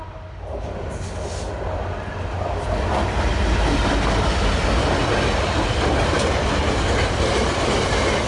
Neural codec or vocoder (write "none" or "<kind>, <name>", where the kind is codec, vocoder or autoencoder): none